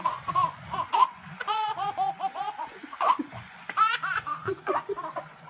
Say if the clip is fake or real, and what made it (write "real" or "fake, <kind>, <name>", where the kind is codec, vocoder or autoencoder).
fake, vocoder, Vocos